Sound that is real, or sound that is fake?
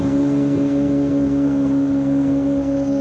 fake